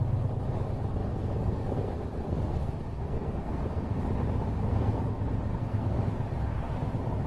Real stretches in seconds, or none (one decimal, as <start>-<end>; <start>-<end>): 0.0-1.0; 4.0-4.6; 5.1-5.5; 6.0-7.3